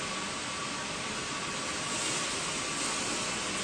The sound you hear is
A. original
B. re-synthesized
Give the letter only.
A